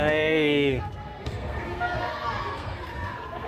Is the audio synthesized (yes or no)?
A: yes